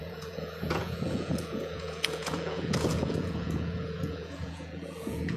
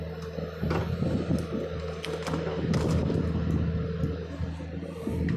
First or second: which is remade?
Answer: first